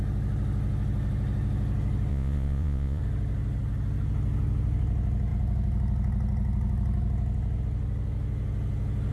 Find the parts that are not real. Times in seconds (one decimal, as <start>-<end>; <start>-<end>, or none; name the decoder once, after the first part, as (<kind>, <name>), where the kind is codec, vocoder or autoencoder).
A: 2.1-3.0 (vocoder, Vocos)